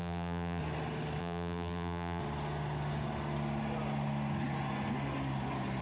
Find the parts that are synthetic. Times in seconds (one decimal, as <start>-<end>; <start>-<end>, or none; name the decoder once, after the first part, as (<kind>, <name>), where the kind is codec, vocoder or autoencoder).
0.0-0.6 (vocoder, BigVGAN v2); 1.2-2.2